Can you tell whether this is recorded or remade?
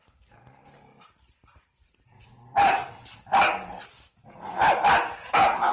recorded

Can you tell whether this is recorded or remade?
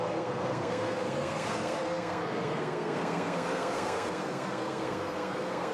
remade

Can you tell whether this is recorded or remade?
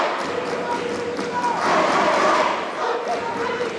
recorded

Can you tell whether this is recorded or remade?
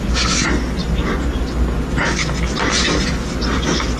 recorded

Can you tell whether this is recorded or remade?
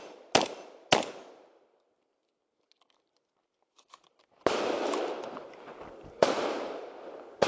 recorded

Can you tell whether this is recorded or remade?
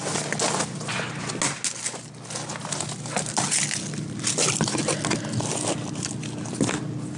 recorded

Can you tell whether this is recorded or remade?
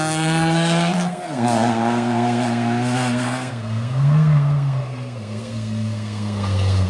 remade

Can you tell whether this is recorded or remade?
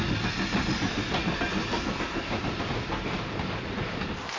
recorded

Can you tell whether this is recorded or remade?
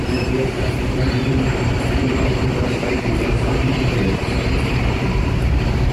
remade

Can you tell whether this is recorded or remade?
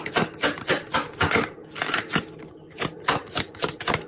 recorded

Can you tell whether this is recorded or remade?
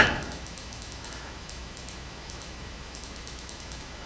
remade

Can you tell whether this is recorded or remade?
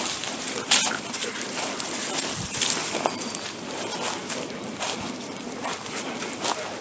remade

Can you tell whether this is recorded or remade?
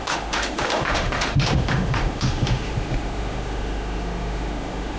remade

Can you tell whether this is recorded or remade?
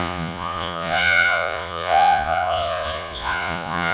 remade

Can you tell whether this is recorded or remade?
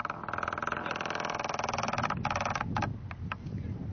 recorded